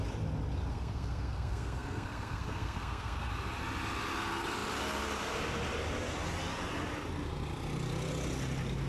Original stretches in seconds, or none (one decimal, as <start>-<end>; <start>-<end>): 0.0-0.7; 3.3-8.9